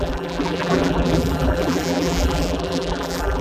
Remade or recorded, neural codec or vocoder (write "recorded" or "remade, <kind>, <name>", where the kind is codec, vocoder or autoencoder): remade, vocoder, BigVGAN v2